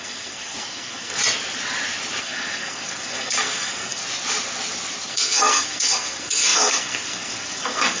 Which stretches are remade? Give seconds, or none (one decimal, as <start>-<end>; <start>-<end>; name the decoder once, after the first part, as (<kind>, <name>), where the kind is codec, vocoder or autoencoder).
0.0-1.2 (codec, SNAC); 2.2-4.0; 5.1-8.0